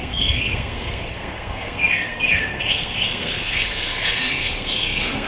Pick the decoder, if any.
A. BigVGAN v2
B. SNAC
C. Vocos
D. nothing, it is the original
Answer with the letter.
B